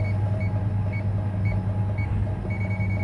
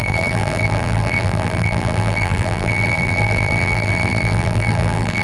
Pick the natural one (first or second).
first